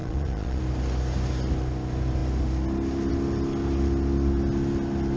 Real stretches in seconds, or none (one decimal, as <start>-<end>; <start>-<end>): 0.6-5.2